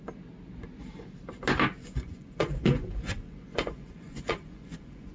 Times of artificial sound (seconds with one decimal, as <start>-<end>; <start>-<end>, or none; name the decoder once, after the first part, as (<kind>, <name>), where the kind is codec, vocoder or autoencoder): 1.8-5.1 (vocoder, Vocos)